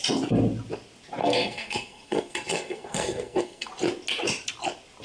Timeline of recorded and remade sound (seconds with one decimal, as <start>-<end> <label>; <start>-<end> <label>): 0.0-1.2 recorded; 1.2-3.7 remade; 3.7-5.0 recorded